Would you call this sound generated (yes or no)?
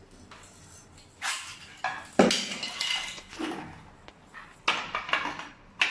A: no